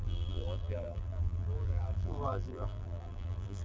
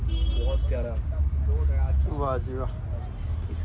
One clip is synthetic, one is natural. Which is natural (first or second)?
second